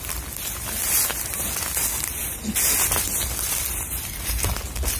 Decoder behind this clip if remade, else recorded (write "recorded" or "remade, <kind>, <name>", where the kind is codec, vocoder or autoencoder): recorded